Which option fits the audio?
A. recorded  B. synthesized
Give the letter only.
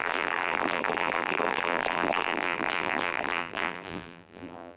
B